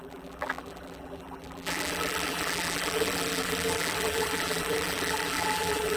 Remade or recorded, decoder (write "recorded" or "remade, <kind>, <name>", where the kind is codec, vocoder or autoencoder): remade, vocoder, BigVGAN v2